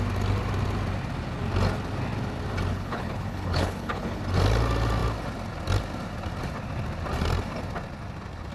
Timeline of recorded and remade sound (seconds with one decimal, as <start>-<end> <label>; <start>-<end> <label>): 0.0-2.7 recorded; 2.7-4.2 remade; 4.2-8.5 recorded